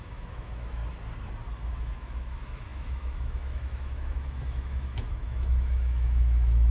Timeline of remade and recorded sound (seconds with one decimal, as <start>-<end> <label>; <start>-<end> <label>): 0.0-0.8 remade; 0.8-1.7 recorded; 1.7-6.7 remade